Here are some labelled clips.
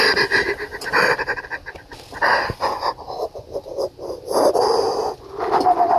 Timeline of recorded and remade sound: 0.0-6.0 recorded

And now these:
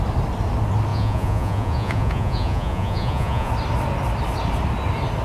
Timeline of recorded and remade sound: 0.0-0.9 recorded; 0.9-3.5 remade; 3.5-5.2 recorded

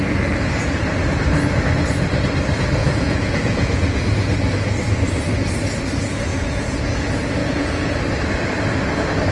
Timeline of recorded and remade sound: 0.0-2.8 recorded; 2.8-4.0 remade; 4.0-6.3 recorded; 6.3-6.8 remade; 6.8-7.4 recorded; 7.4-8.0 remade; 8.0-9.3 recorded

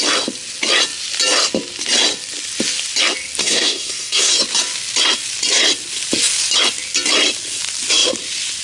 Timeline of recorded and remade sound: 0.0-3.4 recorded; 3.4-4.3 remade; 4.3-8.6 recorded

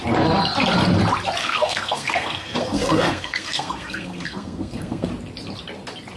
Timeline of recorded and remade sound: 0.0-1.4 recorded; 1.4-5.1 remade; 5.1-6.2 recorded

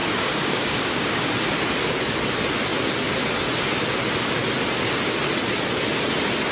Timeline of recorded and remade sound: 0.0-1.3 remade; 1.3-6.5 recorded

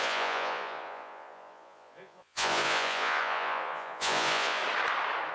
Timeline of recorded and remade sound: 0.0-4.6 remade; 4.6-5.3 recorded